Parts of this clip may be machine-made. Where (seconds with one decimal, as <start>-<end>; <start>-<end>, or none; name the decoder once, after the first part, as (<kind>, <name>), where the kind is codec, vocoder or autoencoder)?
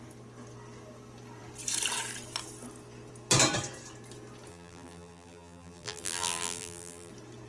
4.5-7.1 (vocoder, BigVGAN v2)